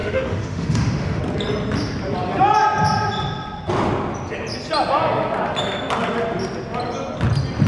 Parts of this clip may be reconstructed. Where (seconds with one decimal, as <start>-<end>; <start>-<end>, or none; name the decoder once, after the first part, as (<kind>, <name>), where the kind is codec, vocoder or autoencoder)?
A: 0.0-1.2 (autoencoder, DAC-VAE)